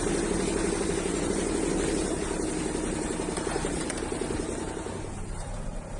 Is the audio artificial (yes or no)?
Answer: no